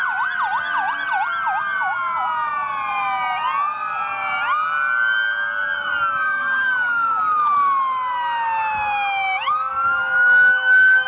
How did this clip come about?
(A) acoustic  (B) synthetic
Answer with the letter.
A